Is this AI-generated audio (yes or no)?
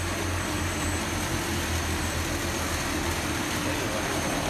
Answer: no